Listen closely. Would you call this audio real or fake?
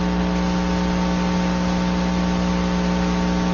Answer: real